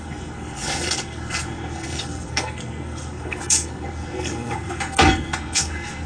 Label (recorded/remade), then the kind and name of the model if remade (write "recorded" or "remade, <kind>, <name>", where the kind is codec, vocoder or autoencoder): remade, codec, SNAC